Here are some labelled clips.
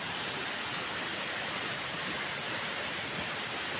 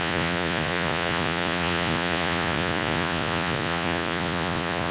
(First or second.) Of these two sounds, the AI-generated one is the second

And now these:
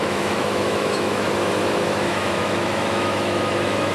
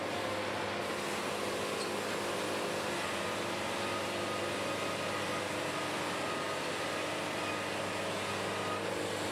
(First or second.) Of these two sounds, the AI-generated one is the first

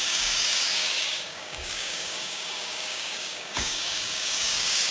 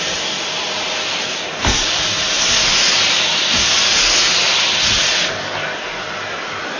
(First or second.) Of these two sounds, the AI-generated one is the first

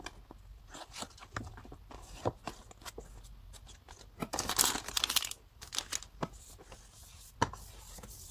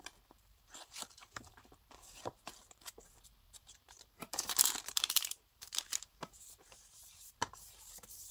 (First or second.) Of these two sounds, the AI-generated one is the second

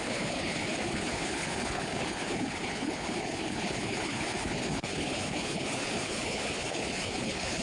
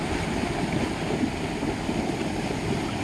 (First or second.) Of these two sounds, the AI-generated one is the first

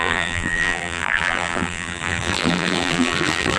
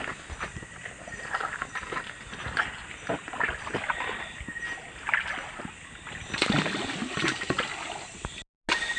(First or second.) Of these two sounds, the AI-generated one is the first